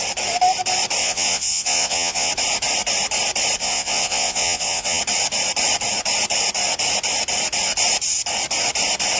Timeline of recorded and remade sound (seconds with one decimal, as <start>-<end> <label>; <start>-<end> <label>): 0.0-1.0 recorded; 1.0-2.3 remade; 2.3-3.6 recorded; 3.6-5.0 remade; 5.0-9.2 recorded